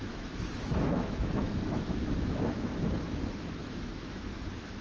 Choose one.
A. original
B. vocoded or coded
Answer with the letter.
B